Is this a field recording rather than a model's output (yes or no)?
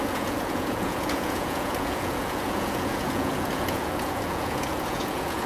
no